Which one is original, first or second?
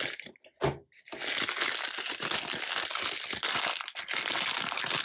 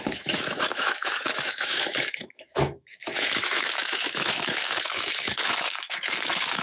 first